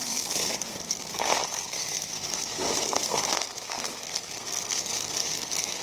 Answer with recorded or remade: remade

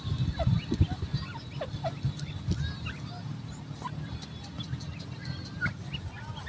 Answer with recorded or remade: recorded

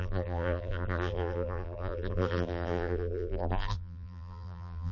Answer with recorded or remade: remade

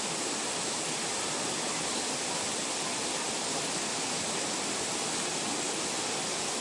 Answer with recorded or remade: recorded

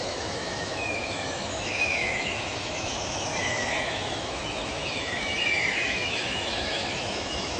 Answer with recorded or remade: remade